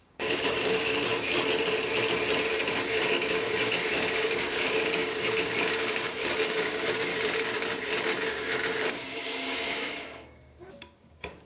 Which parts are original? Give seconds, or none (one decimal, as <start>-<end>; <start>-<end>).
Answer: 1.1-2.9; 7.1-8.2